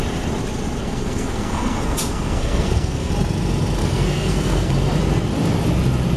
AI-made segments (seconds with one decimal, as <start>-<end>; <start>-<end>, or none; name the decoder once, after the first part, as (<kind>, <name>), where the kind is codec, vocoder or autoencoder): 0.8-3.1 (codec, SNAC); 3.8-4.7